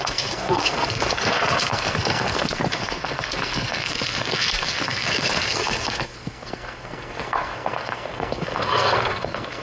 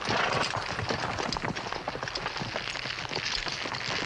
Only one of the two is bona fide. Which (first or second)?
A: second